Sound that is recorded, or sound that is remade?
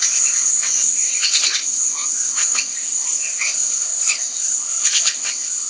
remade